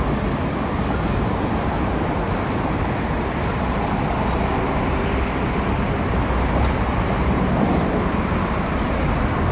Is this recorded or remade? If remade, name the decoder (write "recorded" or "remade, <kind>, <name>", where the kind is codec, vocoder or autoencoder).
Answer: recorded